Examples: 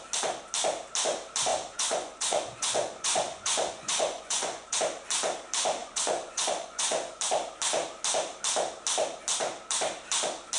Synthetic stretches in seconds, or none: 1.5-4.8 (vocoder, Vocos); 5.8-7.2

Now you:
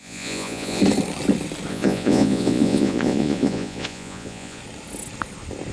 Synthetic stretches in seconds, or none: 0.0-0.8 (vocoder, Vocos); 1.7-4.6